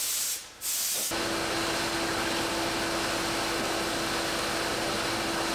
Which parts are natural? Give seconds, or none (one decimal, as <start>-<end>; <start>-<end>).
0.0-5.5